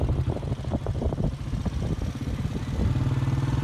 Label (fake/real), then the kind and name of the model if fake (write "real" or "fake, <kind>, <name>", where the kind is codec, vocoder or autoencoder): real